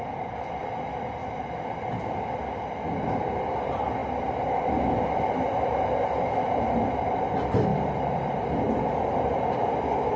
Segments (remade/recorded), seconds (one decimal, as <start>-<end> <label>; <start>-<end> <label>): 0.0-10.2 recorded